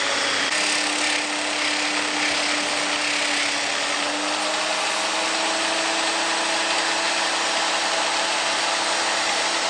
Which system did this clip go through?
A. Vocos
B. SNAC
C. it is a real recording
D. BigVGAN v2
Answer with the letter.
C